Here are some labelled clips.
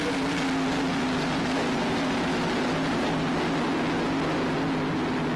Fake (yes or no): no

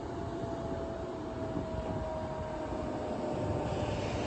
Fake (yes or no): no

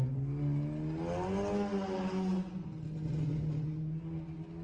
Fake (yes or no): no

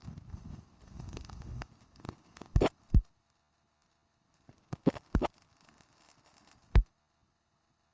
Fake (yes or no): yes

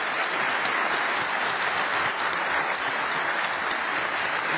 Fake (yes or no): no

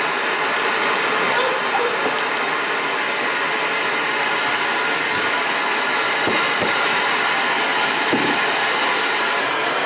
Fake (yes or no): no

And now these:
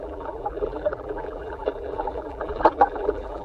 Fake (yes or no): yes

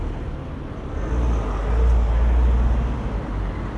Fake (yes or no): no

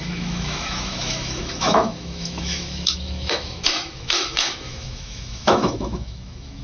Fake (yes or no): yes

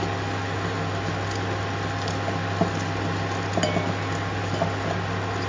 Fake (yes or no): no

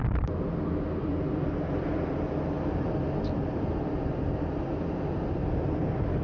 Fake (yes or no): no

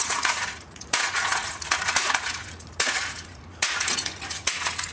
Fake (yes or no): yes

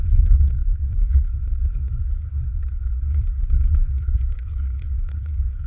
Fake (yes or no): yes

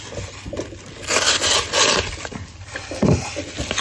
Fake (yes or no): no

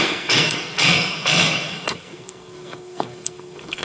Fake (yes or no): yes